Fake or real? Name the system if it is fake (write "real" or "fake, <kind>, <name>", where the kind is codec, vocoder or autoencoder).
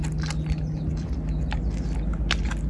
real